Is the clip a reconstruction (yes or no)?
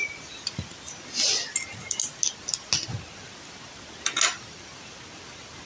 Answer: no